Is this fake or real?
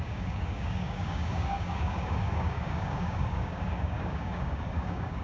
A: fake